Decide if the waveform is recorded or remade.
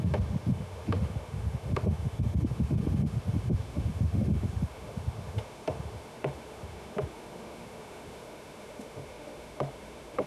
remade